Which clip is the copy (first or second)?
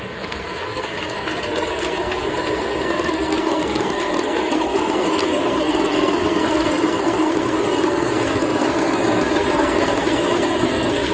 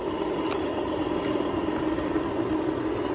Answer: first